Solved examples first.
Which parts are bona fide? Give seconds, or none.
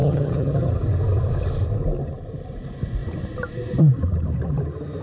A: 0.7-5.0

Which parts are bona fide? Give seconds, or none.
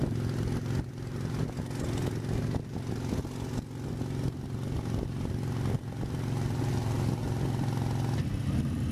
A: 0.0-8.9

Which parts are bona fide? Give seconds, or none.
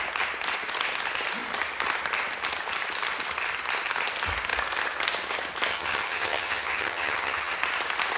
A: 0.0-5.7; 7.5-8.2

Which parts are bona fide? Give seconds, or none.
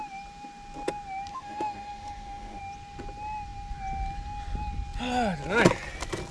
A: 0.0-1.3; 2.6-6.3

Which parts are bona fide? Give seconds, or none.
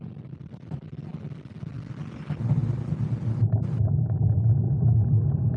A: 2.6-4.4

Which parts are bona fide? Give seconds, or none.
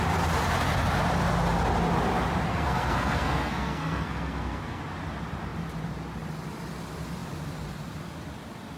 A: 0.0-2.5; 4.8-8.8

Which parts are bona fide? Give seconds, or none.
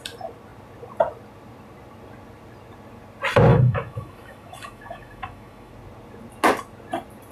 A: 0.0-3.5; 5.7-7.3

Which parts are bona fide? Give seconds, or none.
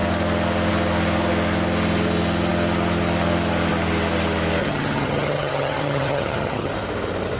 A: 0.0-4.6; 6.7-7.4